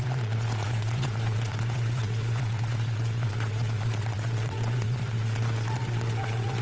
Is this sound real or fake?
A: fake